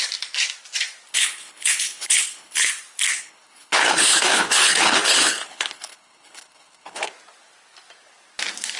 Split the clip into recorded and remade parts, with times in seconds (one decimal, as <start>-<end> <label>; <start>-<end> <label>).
0.0-1.1 recorded; 1.1-2.7 remade; 2.7-3.1 recorded; 3.1-7.1 remade; 7.1-8.8 recorded